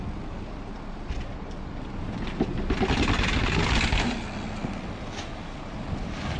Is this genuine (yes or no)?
yes